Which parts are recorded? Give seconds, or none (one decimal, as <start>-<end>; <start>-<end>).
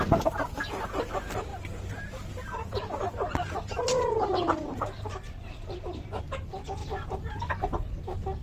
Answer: 0.0-1.5; 6.1-6.8; 7.5-8.4